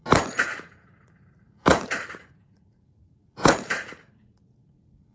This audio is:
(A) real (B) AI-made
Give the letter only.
B